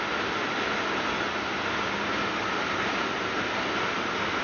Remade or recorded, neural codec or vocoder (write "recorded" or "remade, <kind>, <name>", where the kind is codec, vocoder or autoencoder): recorded